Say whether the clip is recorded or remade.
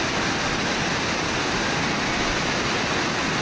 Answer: recorded